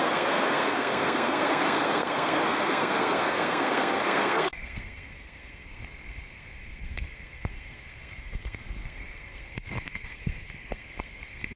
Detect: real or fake fake